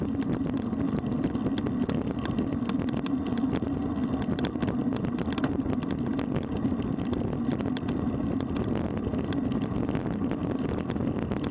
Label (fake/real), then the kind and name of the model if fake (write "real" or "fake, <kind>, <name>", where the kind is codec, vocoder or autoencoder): real